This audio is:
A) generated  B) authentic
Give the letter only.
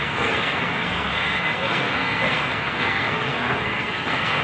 A